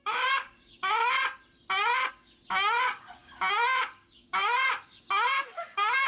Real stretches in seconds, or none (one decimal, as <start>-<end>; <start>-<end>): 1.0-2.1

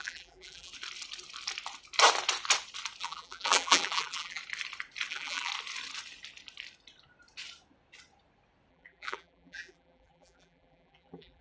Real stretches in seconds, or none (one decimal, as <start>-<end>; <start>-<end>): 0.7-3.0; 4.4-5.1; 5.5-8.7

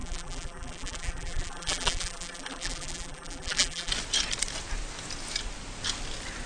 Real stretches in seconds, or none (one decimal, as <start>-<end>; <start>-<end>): 3.9-6.5

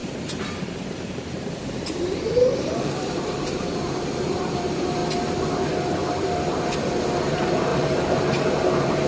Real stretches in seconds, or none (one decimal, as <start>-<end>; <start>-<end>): 5.0-7.2

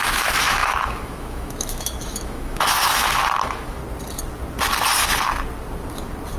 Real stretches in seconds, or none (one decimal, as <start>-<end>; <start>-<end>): 3.8-6.4